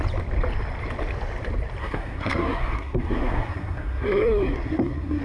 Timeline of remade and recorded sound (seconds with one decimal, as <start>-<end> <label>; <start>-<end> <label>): 0.0-1.8 recorded; 1.8-5.2 remade